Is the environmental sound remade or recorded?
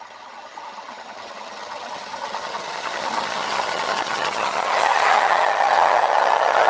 remade